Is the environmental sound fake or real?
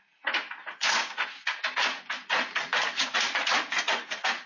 fake